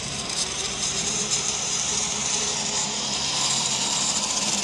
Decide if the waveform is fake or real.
fake